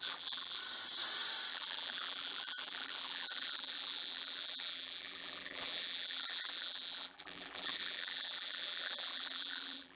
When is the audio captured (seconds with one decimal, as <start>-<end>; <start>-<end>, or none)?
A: 0.6-1.5